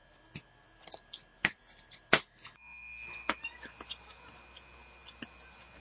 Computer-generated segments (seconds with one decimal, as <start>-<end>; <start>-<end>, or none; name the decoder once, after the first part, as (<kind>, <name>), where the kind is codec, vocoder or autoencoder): none